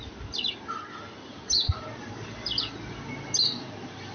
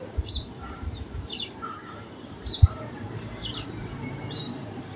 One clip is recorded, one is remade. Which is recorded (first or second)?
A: first